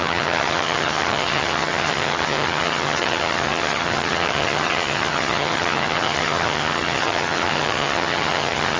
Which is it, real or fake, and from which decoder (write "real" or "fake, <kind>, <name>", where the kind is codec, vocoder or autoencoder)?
fake, vocoder, HiFi-GAN